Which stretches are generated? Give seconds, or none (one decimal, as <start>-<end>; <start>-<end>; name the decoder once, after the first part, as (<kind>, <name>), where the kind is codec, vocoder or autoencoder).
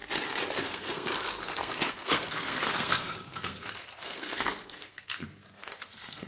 0.6-6.3 (codec, SNAC)